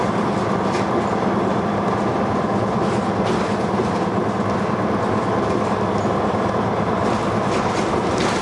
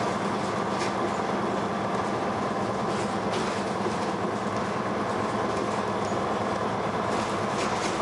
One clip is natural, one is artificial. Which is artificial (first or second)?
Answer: first